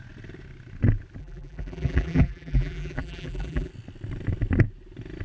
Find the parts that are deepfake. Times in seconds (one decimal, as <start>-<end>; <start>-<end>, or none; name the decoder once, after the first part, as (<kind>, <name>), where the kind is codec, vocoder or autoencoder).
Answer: 1.2-3.7 (vocoder, BigVGAN v2)